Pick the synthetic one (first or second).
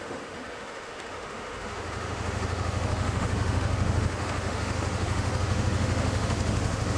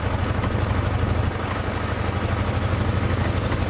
first